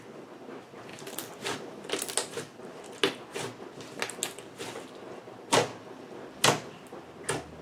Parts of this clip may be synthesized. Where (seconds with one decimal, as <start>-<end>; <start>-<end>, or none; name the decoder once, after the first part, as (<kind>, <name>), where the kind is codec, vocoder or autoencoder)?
0.9-1.9 (vocoder, BigVGAN v2)